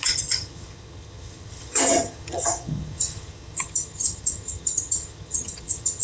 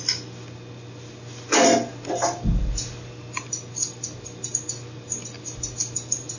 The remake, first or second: first